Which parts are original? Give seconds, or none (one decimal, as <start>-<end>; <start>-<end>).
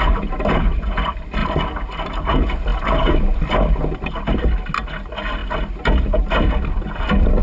0.0-7.4